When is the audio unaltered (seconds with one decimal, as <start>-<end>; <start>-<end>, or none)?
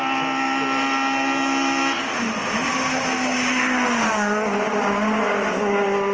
0.0-6.1